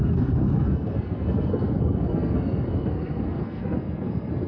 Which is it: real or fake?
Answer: fake